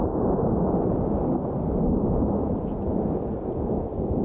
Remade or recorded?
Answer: recorded